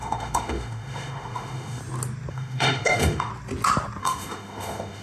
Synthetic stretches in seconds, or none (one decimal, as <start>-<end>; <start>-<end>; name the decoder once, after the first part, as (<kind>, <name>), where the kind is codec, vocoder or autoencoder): 0.0-1.8 (autoencoder, DAC-VAE); 2.3-3.3; 4.0-5.0